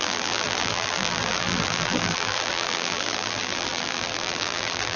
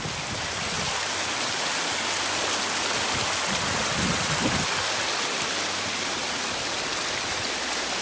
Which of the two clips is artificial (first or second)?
first